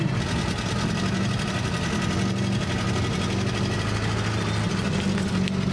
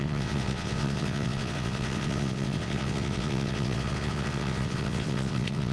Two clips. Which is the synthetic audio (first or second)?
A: second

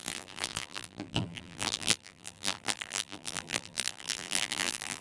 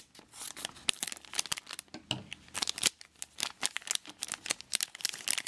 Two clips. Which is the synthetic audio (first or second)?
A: first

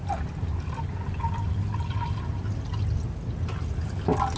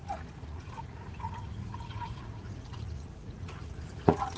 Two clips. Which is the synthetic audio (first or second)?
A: second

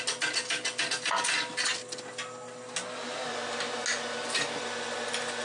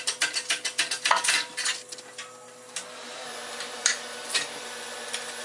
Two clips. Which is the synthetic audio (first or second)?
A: second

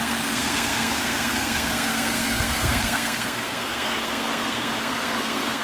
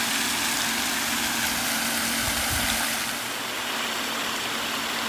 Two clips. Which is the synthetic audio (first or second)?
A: first